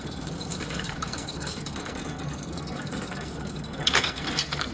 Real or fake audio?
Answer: fake